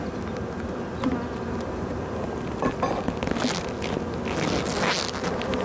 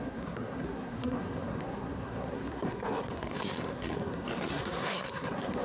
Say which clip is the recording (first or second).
first